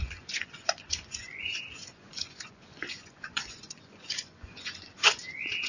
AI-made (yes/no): yes